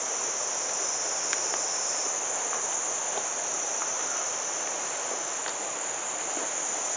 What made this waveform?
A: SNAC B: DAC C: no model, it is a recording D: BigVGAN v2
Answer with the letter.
C